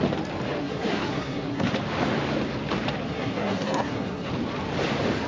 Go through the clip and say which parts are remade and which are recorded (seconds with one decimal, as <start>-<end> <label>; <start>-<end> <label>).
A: 0.0-0.6 recorded; 0.6-1.7 remade; 1.7-3.1 recorded; 3.1-4.3 remade; 4.3-5.3 recorded